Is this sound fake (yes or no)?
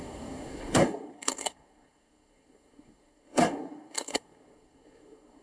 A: yes